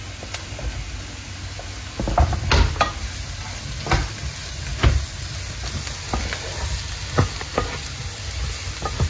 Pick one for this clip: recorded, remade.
recorded